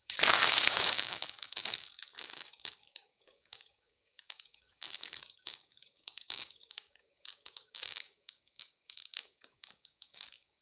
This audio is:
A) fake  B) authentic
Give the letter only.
A